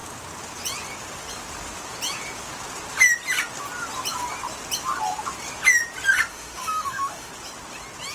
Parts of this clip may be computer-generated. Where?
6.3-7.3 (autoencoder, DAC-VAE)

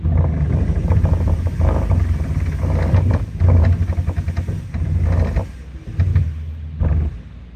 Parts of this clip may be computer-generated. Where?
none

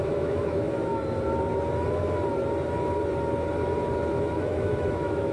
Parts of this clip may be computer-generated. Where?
0.0-0.9 (autoencoder, DAC-VAE); 4.1-5.3

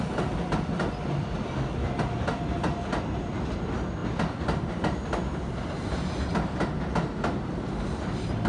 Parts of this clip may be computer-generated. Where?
none

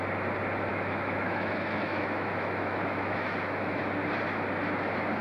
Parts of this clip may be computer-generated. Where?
0.7-3.8 (autoencoder, DAC-VAE)

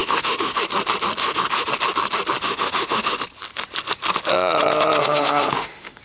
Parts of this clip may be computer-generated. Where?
0.0-0.6 (autoencoder, DAC-VAE); 1.2-1.7; 2.4-3.2; 5.0-6.0

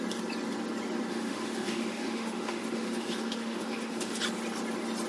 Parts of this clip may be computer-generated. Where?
1.1-4.2 (autoencoder, DAC-VAE)